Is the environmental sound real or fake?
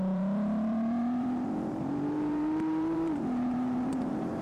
fake